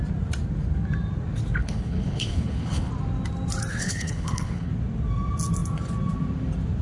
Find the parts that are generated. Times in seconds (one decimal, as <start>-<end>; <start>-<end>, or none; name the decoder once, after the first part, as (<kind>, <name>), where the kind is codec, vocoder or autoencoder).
1.6-2.9 (codec, HILCodec); 3.7-4.7